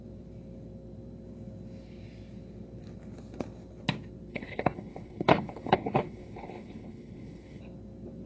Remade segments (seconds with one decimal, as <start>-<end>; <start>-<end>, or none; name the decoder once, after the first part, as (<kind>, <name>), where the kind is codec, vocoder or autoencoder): 4.3-7.6 (codec, HILCodec)